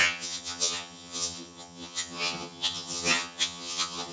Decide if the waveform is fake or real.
fake